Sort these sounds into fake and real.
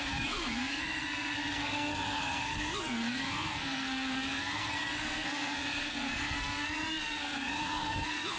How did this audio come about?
fake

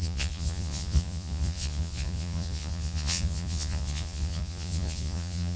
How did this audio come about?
fake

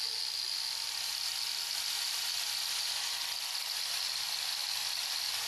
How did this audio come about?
real